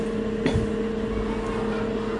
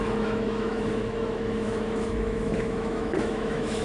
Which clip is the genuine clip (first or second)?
first